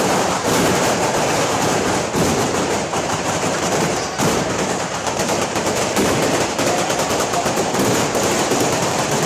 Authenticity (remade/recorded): remade